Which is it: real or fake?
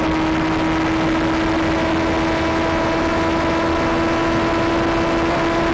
real